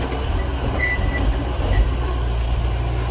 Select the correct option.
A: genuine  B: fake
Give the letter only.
A